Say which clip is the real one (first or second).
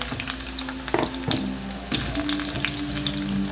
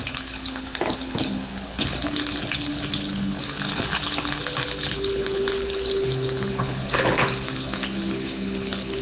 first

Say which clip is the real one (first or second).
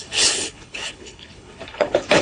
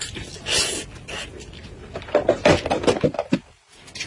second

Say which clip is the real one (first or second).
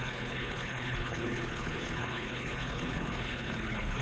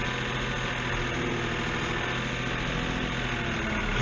second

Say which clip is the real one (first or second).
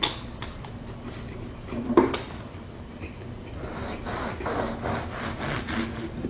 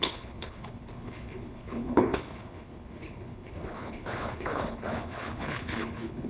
first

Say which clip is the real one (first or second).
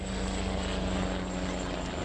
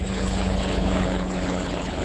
first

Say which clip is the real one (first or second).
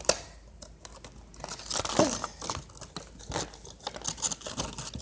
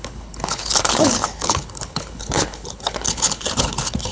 first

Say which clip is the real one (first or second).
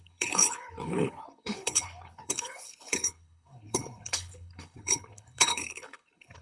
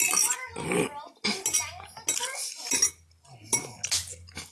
second